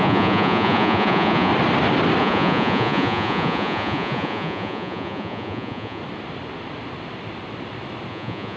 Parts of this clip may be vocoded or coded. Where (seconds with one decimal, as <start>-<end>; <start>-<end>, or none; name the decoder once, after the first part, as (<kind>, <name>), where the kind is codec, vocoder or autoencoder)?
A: 0.0-1.5 (vocoder, Vocos); 2.2-6.0; 8.1-8.6